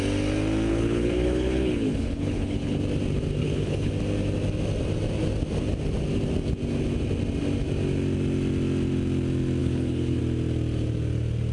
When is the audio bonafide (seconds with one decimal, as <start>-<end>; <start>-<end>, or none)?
0.0-0.7; 2.8-3.4; 3.9-9.6; 10.2-11.5